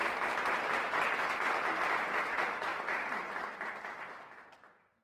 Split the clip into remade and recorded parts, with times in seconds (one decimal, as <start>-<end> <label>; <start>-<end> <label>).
0.0-5.0 recorded